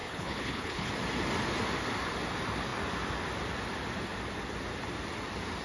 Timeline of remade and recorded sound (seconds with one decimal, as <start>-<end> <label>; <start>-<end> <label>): 0.0-0.9 remade; 0.9-5.6 recorded